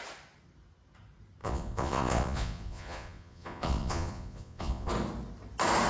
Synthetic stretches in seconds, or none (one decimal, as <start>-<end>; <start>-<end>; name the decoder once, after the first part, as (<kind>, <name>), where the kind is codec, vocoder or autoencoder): 1.4-4.9 (vocoder, Vocos)